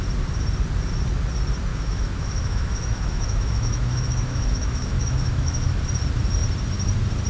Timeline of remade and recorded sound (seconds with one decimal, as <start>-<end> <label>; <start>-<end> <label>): 0.0-1.7 recorded; 1.7-5.8 remade; 5.8-7.3 recorded